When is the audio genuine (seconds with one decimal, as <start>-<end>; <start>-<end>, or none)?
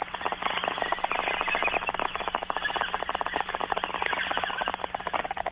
0.0-5.5